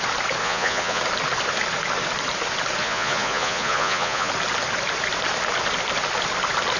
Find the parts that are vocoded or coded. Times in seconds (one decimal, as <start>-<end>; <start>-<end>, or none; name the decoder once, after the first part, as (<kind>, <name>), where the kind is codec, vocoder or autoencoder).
0.4-1.0 (vocoder, Vocos); 2.8-4.3